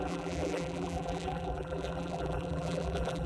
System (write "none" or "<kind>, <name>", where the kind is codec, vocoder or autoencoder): vocoder, BigVGAN v2